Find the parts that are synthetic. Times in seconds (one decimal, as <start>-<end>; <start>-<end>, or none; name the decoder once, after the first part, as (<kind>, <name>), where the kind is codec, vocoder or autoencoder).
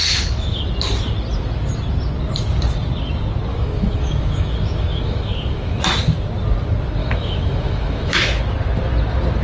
0.0-0.6 (autoencoder, DAC-VAE); 3.5-5.8; 7.0-8.4